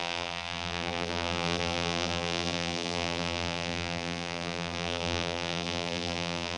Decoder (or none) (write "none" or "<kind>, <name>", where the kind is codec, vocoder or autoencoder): vocoder, BigVGAN v2